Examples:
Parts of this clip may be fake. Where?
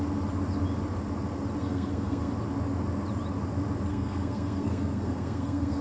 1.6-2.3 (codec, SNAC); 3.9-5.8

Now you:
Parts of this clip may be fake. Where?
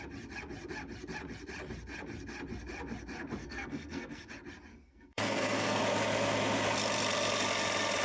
3.4-4.3 (codec, SNAC); 4.7-5.8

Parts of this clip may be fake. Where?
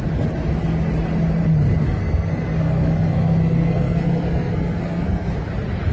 1.8-5.3 (codec, SNAC)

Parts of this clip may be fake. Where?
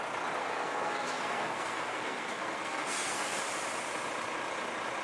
0.4-3.4 (codec, SNAC)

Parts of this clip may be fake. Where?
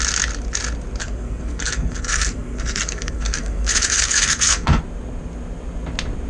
1.0-4.8 (codec, SNAC)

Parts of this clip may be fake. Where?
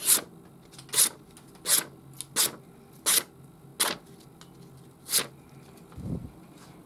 none